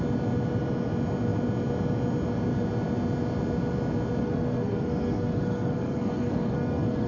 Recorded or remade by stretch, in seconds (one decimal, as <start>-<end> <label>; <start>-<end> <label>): 0.0-4.2 recorded; 4.2-7.1 remade